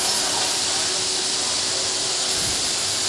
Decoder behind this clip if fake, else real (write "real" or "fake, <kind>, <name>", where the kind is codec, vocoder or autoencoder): real